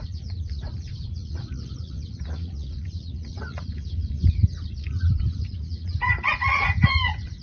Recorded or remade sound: remade